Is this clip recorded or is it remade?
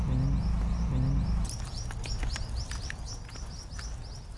recorded